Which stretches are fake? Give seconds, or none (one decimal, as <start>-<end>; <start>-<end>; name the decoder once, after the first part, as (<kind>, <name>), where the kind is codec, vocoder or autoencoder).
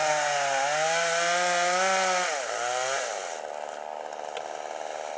none